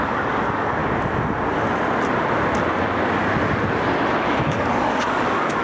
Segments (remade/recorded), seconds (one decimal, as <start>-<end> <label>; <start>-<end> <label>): 0.0-0.8 remade; 0.8-4.2 recorded; 4.2-5.6 remade

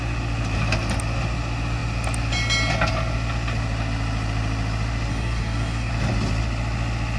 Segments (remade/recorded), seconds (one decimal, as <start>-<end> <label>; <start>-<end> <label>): 0.0-5.1 recorded; 5.1-5.9 remade; 5.9-7.2 recorded

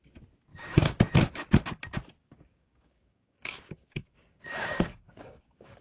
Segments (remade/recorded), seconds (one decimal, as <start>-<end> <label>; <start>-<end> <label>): 0.0-0.5 recorded; 0.5-1.0 remade; 1.0-2.2 recorded; 2.2-5.8 remade

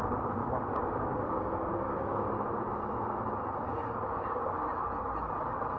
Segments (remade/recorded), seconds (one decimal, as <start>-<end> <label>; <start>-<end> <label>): 0.0-0.4 recorded; 0.4-2.2 remade; 2.2-3.7 recorded; 3.7-4.6 remade; 4.6-5.8 recorded

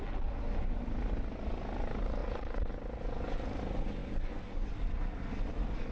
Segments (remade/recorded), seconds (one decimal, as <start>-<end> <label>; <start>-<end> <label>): 0.0-4.0 recorded; 4.0-4.8 remade; 4.8-5.9 recorded

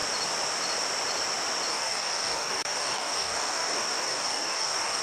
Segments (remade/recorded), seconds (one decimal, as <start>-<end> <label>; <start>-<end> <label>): 0.0-1.7 recorded; 1.7-5.0 remade